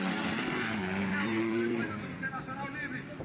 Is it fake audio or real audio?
fake